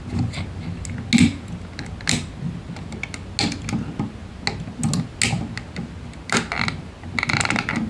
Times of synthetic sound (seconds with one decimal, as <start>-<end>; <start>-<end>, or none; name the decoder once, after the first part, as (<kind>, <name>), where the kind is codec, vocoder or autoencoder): none